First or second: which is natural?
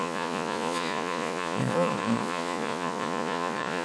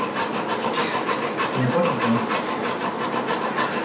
second